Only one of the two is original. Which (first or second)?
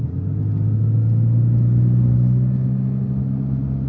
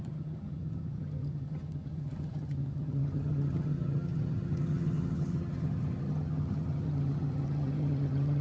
first